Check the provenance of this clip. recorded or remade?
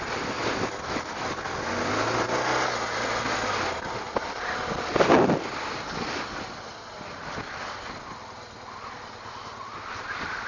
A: recorded